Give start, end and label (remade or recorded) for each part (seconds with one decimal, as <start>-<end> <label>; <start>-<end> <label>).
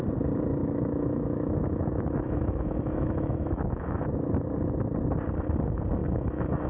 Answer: 0.0-0.6 recorded; 0.6-4.0 remade; 4.0-6.0 recorded; 6.0-6.7 remade